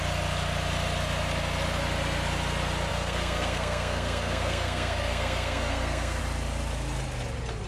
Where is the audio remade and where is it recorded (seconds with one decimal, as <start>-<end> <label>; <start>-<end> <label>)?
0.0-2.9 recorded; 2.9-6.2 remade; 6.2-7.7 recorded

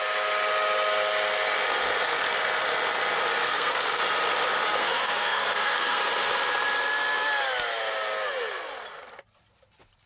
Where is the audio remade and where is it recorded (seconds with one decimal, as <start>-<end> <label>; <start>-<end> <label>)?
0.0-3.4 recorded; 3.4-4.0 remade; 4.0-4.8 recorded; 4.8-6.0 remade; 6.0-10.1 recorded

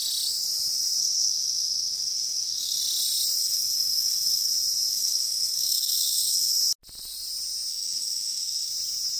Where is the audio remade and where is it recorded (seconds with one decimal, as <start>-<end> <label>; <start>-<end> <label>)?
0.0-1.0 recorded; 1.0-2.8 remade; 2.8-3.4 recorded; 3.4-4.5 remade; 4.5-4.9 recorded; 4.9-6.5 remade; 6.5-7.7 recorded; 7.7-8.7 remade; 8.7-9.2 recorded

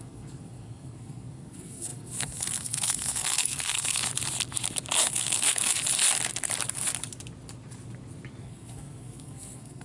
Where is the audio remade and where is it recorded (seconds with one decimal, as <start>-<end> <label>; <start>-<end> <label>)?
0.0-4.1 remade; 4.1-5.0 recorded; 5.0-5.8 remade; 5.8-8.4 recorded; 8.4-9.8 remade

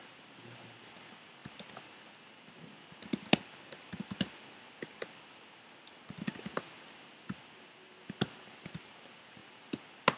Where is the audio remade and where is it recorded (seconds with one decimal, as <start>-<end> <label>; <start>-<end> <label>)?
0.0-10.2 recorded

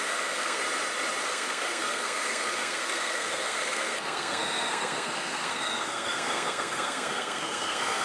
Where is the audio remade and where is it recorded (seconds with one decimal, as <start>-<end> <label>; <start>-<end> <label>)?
0.0-0.6 remade; 0.6-1.2 recorded; 1.2-8.0 remade